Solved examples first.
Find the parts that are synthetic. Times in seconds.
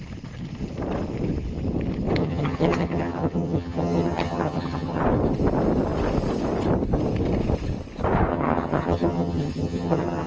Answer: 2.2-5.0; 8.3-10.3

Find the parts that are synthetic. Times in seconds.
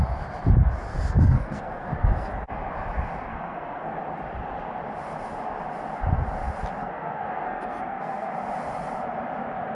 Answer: 0.9-2.3; 3.3-4.0; 6.8-8.3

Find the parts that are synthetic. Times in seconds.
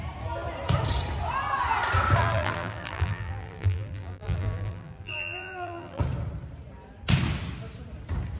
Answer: 2.2-6.0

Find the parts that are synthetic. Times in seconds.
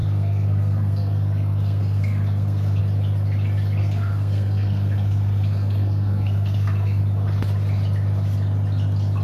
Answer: 0.0-2.8; 3.8-7.0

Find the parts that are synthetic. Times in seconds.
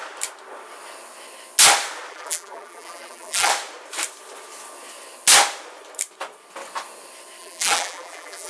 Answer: 2.1-3.5; 7.4-8.5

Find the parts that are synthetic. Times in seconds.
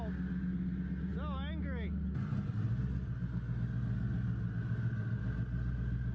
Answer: none